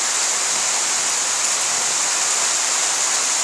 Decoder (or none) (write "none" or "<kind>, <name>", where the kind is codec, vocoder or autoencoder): none